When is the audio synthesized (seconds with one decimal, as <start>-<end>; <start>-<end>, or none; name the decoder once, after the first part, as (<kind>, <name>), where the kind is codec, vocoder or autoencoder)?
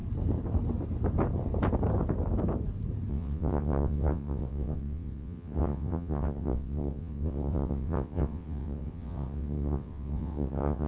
3.1-10.9 (vocoder, WaveNeXt)